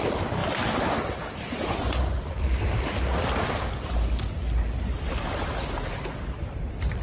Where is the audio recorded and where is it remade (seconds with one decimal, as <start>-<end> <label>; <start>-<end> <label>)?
0.0-7.0 recorded